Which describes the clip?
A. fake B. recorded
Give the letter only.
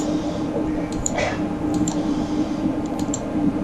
A